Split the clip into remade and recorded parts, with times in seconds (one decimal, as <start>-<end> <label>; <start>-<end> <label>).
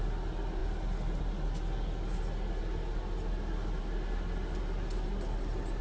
0.0-5.8 recorded